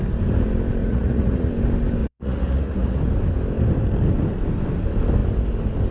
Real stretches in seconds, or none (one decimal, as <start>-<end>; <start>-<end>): 0.0-0.8; 1.5-2.0; 3.0-5.9